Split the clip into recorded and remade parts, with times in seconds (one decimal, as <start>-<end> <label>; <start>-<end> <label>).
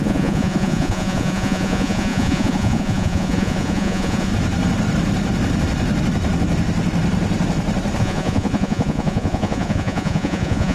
0.0-4.3 remade; 4.3-8.0 recorded; 8.0-10.7 remade